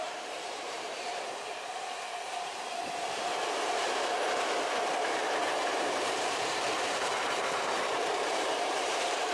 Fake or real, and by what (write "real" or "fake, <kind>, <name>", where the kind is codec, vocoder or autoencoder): fake, vocoder, BigVGAN v2